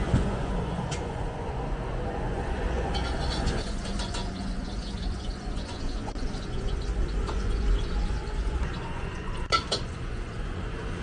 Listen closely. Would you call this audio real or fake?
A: fake